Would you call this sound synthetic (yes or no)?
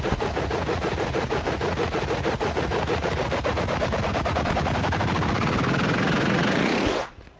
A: yes